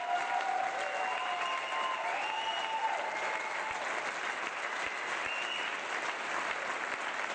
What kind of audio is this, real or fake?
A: real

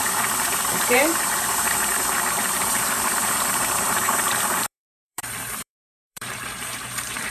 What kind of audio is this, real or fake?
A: fake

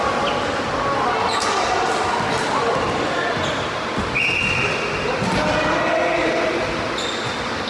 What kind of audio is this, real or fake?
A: real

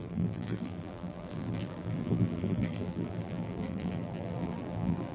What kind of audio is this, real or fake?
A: fake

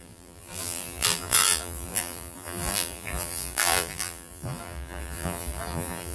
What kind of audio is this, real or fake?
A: fake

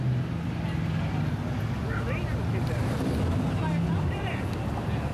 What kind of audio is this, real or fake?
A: real